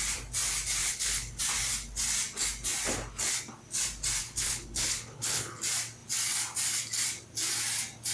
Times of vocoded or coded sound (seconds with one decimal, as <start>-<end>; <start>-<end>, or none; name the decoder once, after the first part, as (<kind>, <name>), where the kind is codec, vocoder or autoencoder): 0.8-1.4 (codec, HILCodec); 4.2-5.6